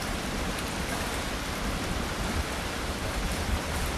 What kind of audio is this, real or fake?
real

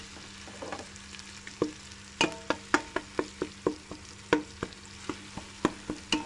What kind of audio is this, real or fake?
real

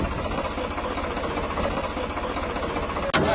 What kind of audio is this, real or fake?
real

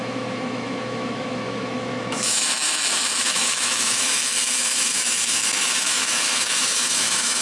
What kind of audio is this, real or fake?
fake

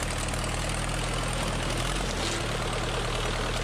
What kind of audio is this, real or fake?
real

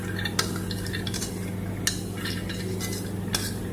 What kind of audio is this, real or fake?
real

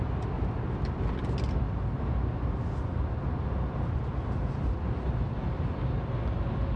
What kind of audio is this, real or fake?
real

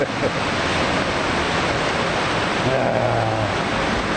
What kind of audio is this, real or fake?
real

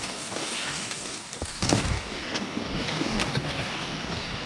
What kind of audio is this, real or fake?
fake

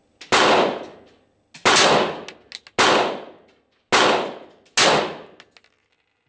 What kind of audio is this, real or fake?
real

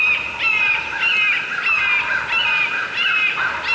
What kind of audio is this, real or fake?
real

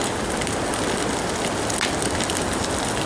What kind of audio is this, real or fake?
real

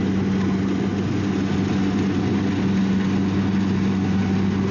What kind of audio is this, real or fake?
real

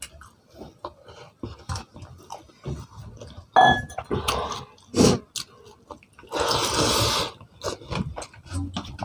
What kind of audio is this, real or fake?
real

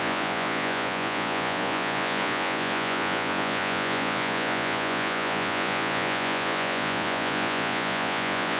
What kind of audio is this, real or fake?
fake